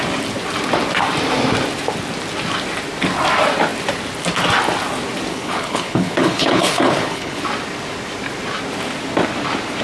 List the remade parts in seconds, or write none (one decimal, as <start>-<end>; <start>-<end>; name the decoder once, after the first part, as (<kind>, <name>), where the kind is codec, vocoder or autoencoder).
5.3-7.4 (codec, HILCodec)